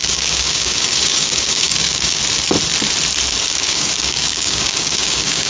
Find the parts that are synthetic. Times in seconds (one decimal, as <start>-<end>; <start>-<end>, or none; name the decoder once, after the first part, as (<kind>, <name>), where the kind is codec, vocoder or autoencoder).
0.0-2.2 (codec, DAC); 3.4-5.5